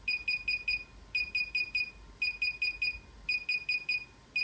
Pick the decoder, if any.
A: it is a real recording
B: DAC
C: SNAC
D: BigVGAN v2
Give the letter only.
A